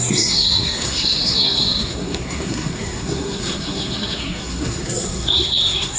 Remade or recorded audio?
remade